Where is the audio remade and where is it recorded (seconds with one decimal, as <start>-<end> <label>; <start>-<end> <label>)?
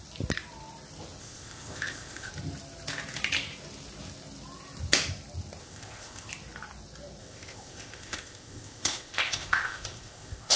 0.0-1.2 recorded; 1.2-2.3 remade; 2.3-5.6 recorded; 5.6-6.3 remade; 6.3-7.2 recorded; 7.2-10.6 remade